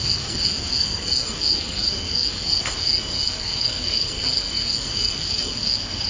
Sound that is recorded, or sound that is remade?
remade